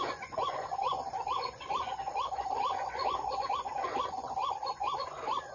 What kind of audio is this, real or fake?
fake